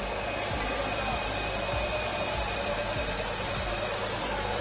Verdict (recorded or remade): recorded